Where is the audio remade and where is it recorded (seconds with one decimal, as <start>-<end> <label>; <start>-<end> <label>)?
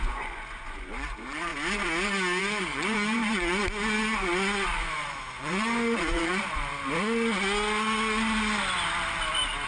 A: 0.0-1.5 remade; 1.5-2.4 recorded; 2.4-3.6 remade; 3.6-4.7 recorded; 4.7-6.7 remade; 6.7-9.7 recorded